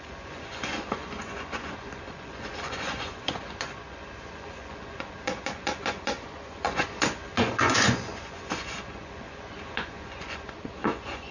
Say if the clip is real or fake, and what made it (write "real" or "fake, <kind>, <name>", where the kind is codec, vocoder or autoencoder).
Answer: fake, vocoder, Vocos